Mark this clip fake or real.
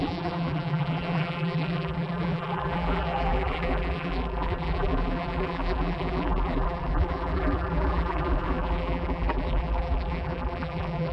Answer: fake